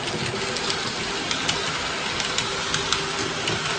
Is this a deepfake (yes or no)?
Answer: no